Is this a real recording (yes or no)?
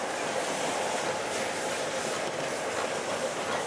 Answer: yes